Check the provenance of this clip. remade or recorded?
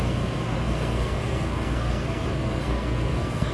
remade